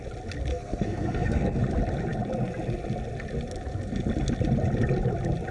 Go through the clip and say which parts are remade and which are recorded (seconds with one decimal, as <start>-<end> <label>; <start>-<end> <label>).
0.0-0.5 recorded; 0.5-1.6 remade; 1.6-5.5 recorded